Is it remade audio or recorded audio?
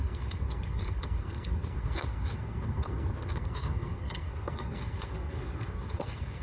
remade